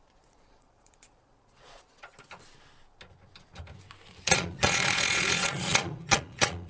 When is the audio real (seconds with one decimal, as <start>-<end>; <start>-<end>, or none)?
2.1-4.2